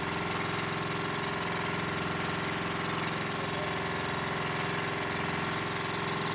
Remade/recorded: recorded